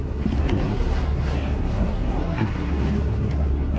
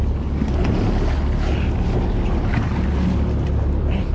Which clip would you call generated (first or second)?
first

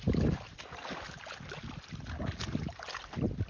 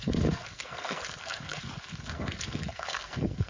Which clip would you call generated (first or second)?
second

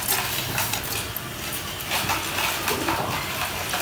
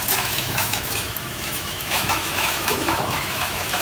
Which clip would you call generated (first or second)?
second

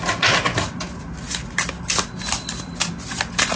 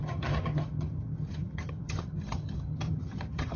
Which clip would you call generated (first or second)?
second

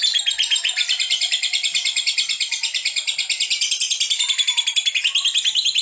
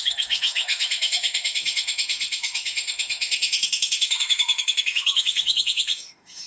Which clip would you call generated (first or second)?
second